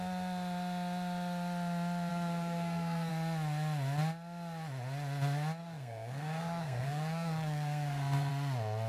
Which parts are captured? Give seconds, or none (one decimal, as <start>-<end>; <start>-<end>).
0.0-2.1; 3.1-5.6; 8.3-8.9

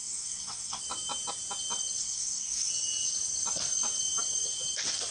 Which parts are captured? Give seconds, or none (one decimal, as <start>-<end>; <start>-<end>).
0.8-2.0; 2.7-5.1